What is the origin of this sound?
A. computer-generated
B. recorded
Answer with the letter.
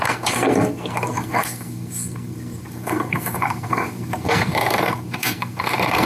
A